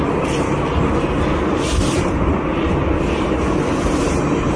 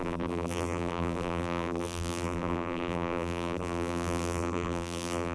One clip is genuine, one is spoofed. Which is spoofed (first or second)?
second